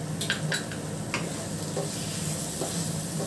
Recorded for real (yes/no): yes